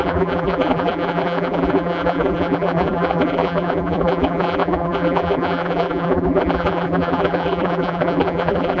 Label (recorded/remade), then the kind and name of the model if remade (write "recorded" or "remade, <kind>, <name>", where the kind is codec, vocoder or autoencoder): remade, vocoder, BigVGAN v2